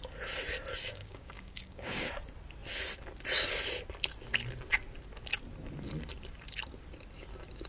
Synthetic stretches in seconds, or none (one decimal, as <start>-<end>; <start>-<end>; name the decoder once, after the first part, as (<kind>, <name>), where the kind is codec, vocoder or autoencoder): 0.7-2.1 (codec, DAC)